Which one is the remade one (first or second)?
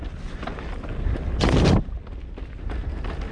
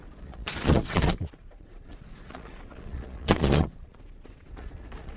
second